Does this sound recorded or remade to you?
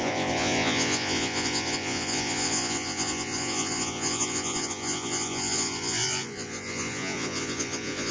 remade